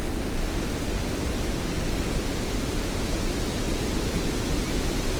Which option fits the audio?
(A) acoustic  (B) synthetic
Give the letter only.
A